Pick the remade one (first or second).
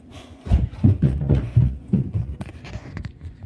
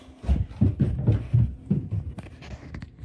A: first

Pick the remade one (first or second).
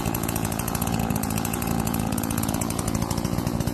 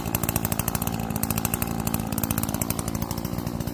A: first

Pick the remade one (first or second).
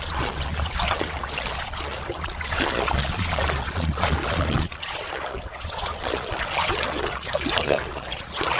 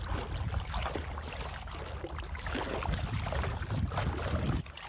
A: first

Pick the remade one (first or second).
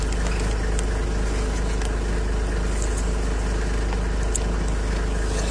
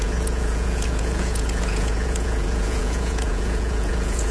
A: second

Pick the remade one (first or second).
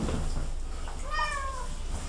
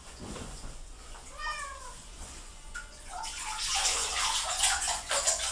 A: second